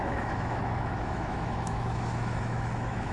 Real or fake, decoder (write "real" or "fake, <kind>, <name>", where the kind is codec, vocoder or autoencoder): fake, autoencoder, DAC-VAE